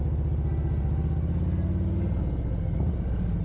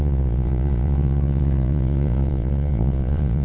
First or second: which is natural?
first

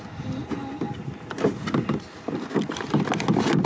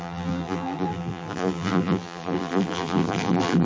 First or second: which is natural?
first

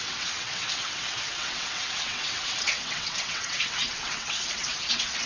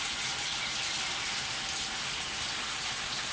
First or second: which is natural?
second